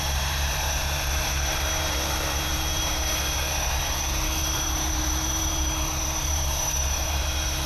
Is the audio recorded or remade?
remade